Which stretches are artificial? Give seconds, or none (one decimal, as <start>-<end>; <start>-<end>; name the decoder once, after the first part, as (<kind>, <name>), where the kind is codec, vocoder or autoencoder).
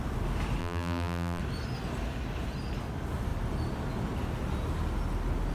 0.6-1.4 (vocoder, BigVGAN v2)